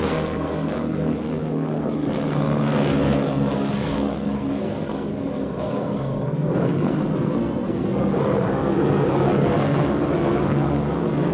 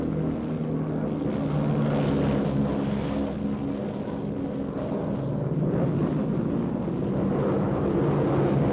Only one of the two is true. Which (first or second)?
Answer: second